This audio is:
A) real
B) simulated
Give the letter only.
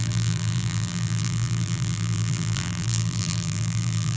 B